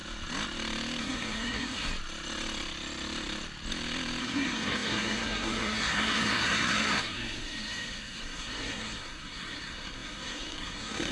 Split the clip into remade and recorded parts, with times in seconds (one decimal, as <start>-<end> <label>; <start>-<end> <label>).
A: 0.0-1.0 recorded; 1.0-1.9 remade; 1.9-4.2 recorded; 4.2-11.1 remade